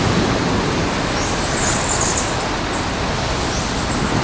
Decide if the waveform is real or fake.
real